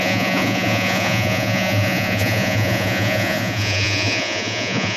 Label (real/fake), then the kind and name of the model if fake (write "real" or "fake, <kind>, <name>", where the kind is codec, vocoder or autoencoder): fake, vocoder, Vocos